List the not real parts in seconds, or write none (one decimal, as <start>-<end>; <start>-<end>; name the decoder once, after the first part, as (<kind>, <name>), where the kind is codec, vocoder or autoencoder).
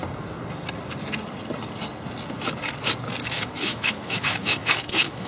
3.2-5.3 (autoencoder, DAC-VAE)